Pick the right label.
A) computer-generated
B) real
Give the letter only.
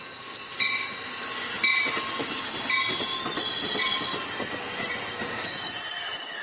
B